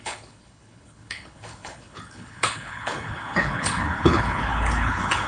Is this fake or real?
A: fake